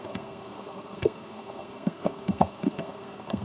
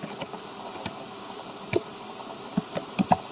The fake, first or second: first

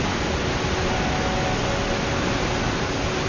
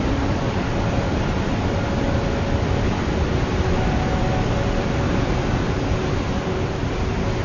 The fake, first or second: second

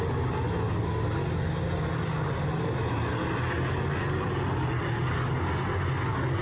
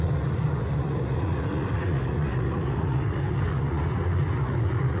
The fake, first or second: second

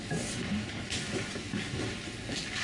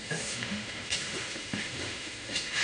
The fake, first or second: second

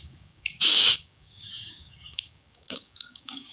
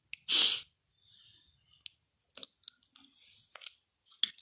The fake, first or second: first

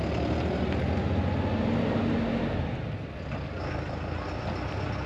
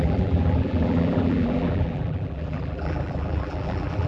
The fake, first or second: second